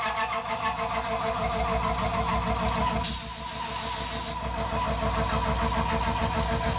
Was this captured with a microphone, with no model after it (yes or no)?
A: yes